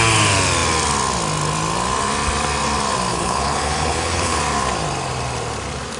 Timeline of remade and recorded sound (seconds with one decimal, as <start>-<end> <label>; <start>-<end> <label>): 0.0-3.1 recorded; 3.1-4.4 remade; 4.4-6.0 recorded